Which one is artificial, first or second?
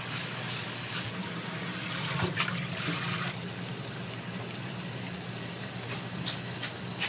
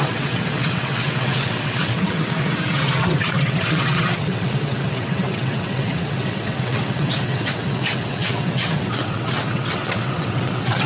second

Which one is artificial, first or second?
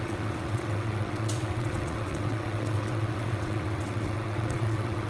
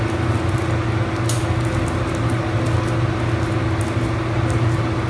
first